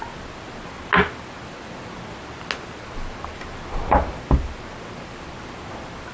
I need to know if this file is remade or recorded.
recorded